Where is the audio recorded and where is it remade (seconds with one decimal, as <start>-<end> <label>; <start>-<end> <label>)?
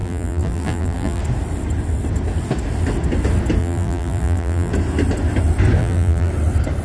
0.0-1.2 remade; 1.2-3.6 recorded; 3.6-4.7 remade; 4.7-5.8 recorded; 5.8-6.3 remade; 6.3-6.8 recorded